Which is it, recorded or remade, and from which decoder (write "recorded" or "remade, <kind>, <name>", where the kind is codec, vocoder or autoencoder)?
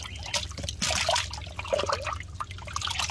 recorded